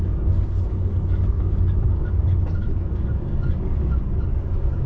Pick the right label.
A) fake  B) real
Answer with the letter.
A